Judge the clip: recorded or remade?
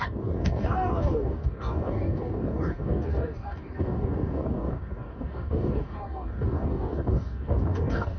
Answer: remade